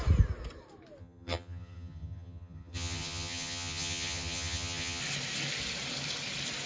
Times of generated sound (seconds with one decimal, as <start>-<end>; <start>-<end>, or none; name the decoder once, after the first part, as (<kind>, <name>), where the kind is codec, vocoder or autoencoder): 1.0-5.0 (vocoder, HiFi-GAN)